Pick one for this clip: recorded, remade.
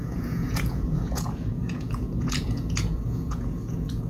remade